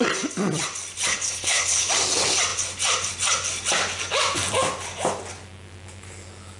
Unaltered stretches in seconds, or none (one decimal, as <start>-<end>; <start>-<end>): 0.0-1.1; 1.9-6.6